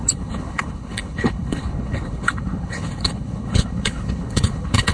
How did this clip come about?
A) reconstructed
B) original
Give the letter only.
A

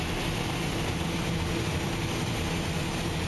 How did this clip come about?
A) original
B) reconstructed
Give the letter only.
A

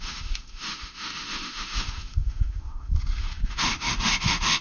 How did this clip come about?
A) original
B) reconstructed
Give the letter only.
B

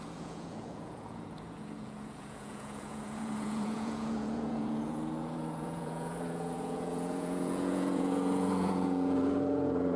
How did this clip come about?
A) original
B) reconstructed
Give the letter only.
B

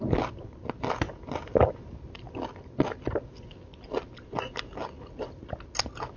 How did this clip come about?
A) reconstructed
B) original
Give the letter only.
B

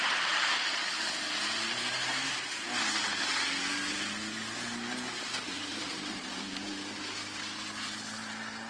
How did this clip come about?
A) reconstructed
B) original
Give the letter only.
B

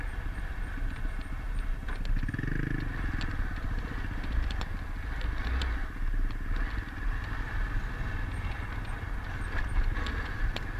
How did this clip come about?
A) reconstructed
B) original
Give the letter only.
B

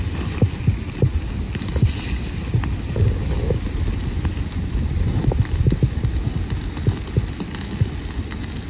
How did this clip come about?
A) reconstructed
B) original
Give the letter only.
B